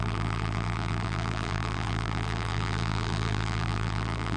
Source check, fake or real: fake